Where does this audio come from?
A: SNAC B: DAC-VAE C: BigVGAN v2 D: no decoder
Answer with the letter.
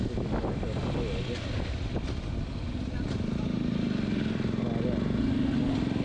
D